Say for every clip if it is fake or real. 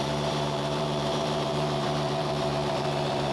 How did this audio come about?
fake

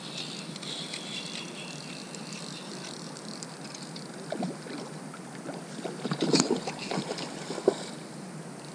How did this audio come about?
real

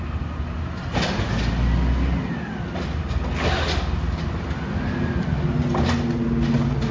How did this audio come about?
real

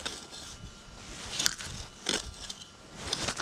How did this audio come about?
real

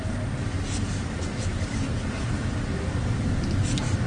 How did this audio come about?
real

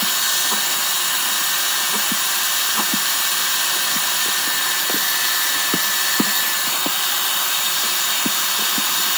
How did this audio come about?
real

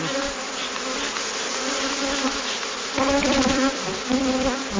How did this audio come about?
fake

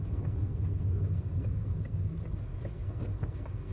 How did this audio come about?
fake